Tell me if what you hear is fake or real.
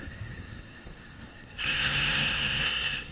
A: fake